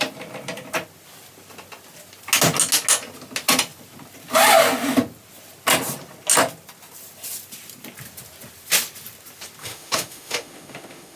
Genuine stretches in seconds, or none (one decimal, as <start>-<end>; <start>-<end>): 0.0-9.6